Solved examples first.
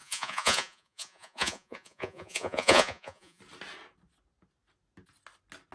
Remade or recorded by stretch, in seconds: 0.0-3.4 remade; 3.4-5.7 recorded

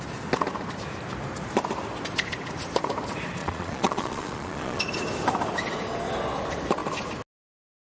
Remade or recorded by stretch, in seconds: 0.0-3.4 recorded; 3.4-4.8 remade; 4.8-7.8 recorded

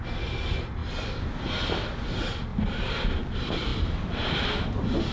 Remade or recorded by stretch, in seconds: 0.0-5.1 recorded